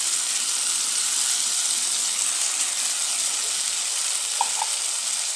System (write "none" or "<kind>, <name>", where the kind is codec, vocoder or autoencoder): none